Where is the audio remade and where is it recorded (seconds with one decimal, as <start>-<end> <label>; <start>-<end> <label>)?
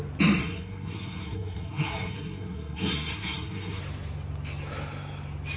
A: 0.0-0.4 recorded; 0.4-3.8 remade; 3.8-5.6 recorded